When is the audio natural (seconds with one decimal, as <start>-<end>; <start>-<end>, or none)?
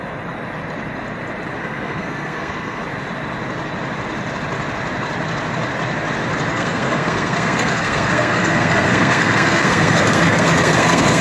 0.0-1.6; 2.8-6.5